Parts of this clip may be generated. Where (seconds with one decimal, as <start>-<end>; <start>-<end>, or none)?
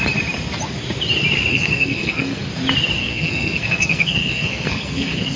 1.5-2.5; 3.0-5.4